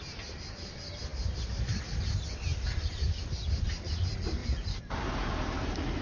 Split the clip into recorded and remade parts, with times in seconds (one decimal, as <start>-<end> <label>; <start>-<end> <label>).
0.0-4.4 recorded; 4.4-6.0 remade